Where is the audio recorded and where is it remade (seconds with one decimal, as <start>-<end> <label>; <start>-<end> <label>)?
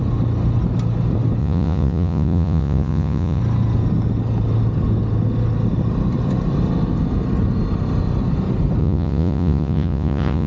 0.0-1.4 recorded; 1.4-3.4 remade; 3.4-8.8 recorded; 8.8-10.5 remade